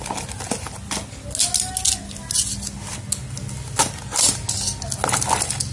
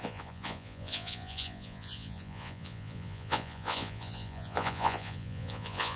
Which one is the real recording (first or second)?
first